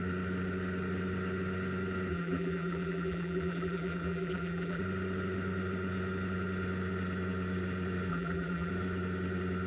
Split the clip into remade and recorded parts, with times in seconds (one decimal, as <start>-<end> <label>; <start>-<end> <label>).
0.0-2.1 recorded; 2.1-4.8 remade; 4.8-8.1 recorded; 8.1-8.7 remade; 8.7-9.7 recorded